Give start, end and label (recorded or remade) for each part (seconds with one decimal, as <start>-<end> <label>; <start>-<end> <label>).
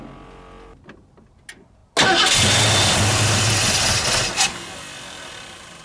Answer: 0.0-5.8 recorded